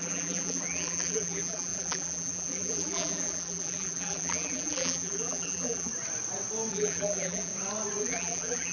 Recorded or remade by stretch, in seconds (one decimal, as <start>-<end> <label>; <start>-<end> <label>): 0.0-5.9 remade; 5.9-6.7 recorded; 6.7-7.5 remade; 7.5-8.0 recorded; 8.0-8.7 remade